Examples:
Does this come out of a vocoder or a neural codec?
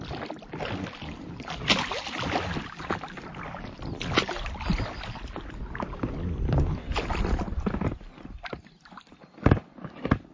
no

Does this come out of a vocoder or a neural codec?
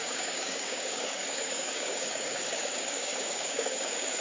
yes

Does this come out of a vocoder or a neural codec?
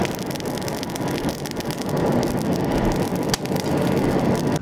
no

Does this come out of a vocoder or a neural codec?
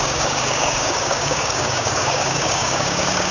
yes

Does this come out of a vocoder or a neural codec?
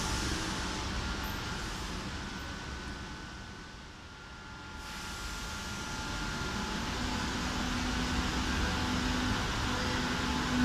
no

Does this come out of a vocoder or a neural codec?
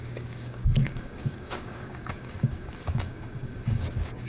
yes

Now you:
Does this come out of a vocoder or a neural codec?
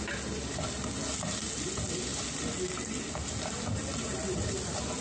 no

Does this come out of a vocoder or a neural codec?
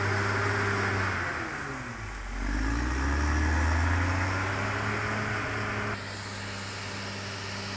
no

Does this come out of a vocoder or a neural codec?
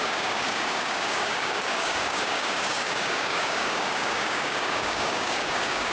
yes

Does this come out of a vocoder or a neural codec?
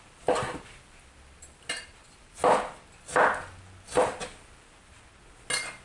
no